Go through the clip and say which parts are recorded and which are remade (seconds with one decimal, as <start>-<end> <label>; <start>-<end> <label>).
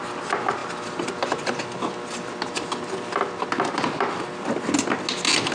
0.0-5.5 recorded